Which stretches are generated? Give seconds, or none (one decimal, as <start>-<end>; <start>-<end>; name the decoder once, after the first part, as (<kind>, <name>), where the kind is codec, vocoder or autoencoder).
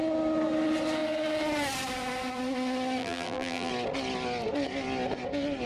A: 3.0-3.7 (vocoder, BigVGAN v2)